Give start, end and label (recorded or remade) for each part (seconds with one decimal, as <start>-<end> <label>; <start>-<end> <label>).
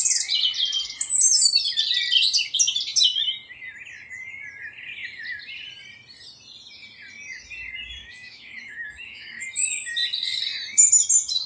0.0-8.0 recorded; 8.0-9.4 remade; 9.4-11.5 recorded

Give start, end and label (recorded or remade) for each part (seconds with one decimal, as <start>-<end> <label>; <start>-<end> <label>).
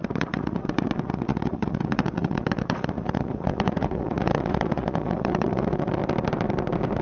0.0-6.0 remade; 6.0-7.0 recorded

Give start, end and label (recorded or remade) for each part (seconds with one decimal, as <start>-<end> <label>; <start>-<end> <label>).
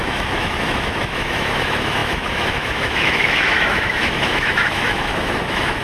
0.0-5.8 remade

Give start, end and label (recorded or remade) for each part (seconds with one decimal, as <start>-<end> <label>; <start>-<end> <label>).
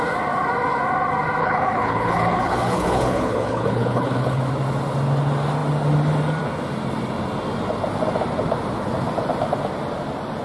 0.0-1.4 recorded; 1.4-4.4 remade; 4.4-10.4 recorded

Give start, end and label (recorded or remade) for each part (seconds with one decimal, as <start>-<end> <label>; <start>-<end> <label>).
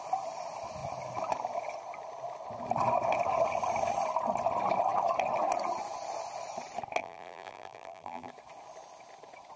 0.0-7.0 recorded; 7.0-8.3 remade; 8.3-9.6 recorded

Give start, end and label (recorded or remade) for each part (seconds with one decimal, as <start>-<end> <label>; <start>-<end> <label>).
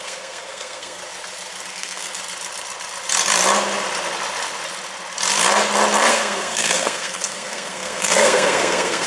0.0-1.0 remade; 1.0-1.7 recorded; 1.7-2.1 remade; 2.1-6.1 recorded; 6.1-9.1 remade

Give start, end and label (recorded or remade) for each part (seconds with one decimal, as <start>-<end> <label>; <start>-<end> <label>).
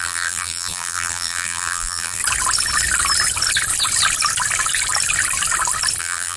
0.0-2.2 remade; 2.2-6.0 recorded; 6.0-6.4 remade